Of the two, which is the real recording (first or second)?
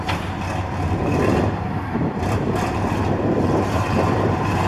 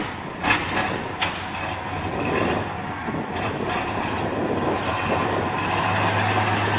second